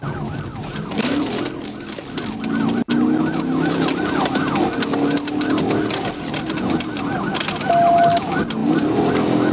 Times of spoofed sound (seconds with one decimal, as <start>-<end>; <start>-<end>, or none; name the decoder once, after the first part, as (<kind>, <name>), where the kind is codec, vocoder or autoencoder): none

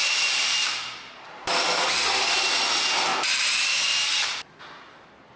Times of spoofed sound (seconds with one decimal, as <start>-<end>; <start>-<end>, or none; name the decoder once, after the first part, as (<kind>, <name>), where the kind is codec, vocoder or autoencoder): 0.0-2.0 (vocoder, BigVGAN v2); 3.1-3.7

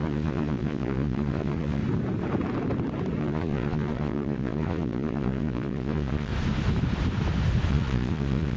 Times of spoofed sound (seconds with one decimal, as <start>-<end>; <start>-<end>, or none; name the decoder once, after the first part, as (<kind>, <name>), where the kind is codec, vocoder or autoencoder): 0.0-1.8 (vocoder, Vocos); 3.2-6.3; 7.7-8.6